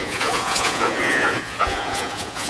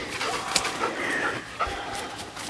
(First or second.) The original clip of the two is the second